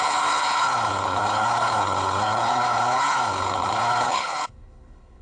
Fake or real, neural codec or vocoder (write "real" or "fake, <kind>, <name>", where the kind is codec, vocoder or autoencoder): fake, codec, HILCodec